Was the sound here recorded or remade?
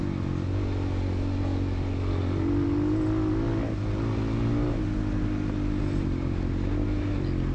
recorded